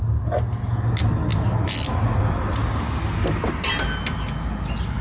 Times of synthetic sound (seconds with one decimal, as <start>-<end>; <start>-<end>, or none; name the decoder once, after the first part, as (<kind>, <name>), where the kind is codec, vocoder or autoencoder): none